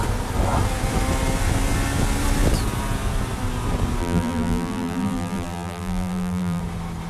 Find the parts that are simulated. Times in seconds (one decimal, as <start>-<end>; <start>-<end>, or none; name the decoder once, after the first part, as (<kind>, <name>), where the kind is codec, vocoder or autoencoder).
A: 4.0-6.6 (vocoder, BigVGAN v2)